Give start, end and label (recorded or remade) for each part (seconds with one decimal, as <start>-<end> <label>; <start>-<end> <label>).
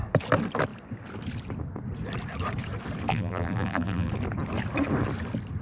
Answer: 0.0-3.1 recorded; 3.1-4.1 remade; 4.1-5.6 recorded